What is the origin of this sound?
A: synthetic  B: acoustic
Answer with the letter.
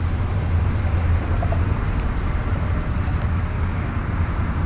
A